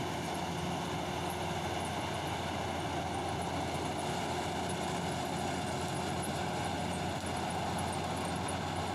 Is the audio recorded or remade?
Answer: recorded